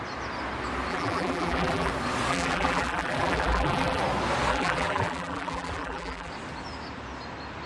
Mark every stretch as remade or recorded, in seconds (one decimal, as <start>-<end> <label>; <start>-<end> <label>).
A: 0.0-0.9 recorded; 0.9-1.9 remade; 1.9-2.3 recorded; 2.3-4.0 remade; 4.0-4.5 recorded; 4.5-6.3 remade; 6.3-7.7 recorded